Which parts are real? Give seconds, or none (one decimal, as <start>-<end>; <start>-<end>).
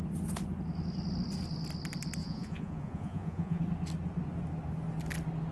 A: 0.0-2.2; 3.6-5.5